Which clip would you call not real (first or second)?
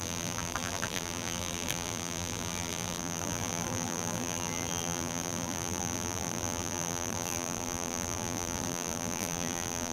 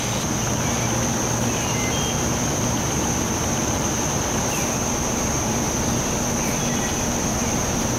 first